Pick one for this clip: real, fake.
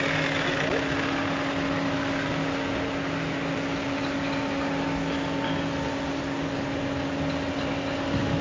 real